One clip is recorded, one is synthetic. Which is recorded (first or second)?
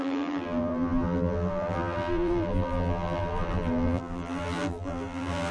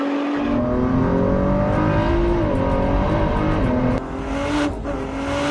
second